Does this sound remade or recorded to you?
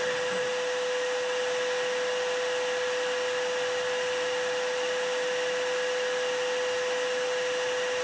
recorded